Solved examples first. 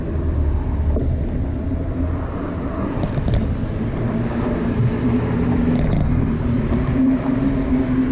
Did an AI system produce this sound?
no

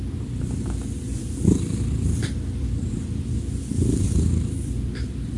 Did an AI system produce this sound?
yes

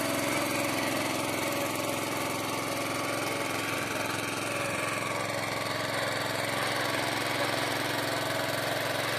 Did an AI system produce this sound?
no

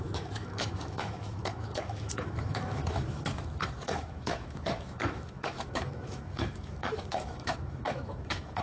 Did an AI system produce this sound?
yes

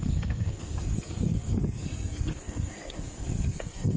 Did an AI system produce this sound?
yes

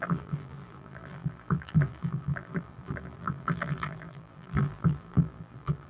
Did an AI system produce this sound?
yes